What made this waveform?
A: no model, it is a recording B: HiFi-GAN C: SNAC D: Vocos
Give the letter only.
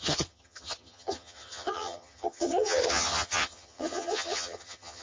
B